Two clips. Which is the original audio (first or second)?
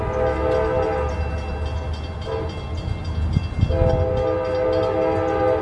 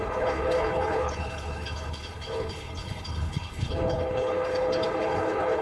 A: first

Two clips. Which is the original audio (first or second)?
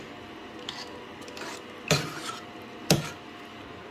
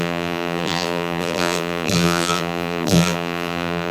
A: first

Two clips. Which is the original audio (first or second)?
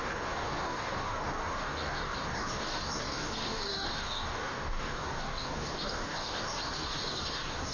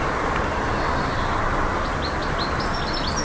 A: second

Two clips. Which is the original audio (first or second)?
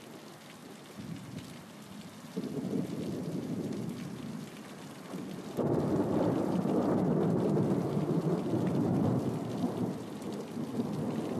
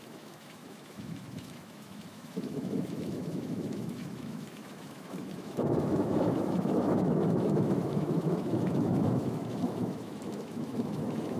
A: first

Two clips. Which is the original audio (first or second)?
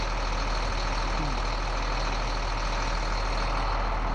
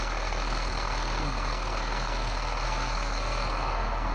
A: first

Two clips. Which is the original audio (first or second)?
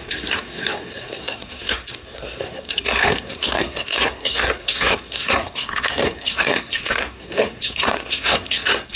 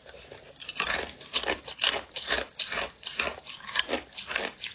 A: second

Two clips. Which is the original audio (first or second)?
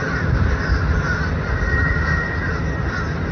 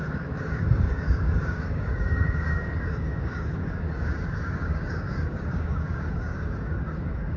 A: first